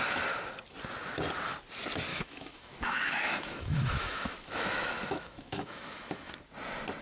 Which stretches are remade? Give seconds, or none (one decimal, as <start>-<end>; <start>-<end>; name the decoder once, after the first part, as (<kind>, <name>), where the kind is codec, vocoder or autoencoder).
2.1-6.3 (autoencoder, DAC-VAE)